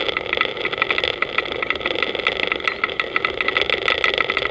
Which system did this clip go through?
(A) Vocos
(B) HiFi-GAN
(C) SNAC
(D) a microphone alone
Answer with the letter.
D